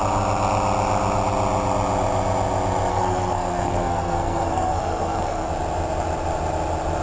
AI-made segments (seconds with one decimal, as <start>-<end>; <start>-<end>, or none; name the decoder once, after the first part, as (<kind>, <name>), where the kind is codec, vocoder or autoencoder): 2.9-5.5 (codec, SNAC)